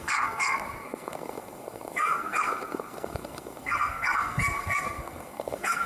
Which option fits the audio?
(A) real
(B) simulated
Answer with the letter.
B